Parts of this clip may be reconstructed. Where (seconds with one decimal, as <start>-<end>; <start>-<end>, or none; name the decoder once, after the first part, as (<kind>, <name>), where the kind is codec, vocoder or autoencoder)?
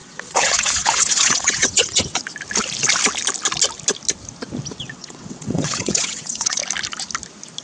0.0-2.2 (vocoder, WaveNeXt); 4.8-6.6